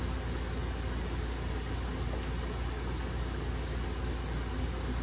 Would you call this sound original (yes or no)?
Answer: yes